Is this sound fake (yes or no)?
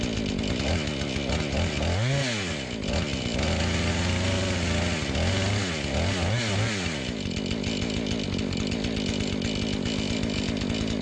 no